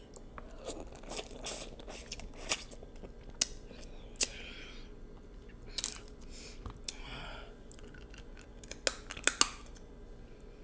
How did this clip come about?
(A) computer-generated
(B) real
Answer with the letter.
B